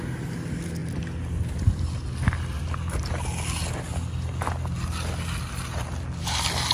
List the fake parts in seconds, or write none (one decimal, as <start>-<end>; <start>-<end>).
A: none